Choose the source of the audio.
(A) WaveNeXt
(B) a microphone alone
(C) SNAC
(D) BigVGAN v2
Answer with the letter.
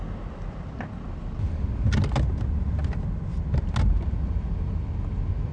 B